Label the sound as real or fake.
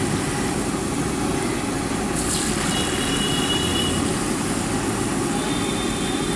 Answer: real